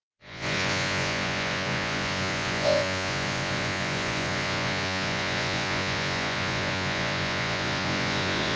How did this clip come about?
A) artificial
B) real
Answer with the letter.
A